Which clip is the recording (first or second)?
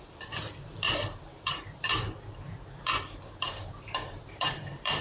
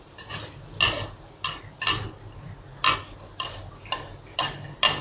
second